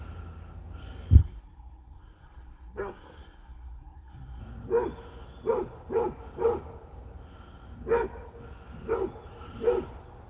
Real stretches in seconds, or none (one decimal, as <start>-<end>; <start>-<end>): 0.0-1.2; 4.4-10.3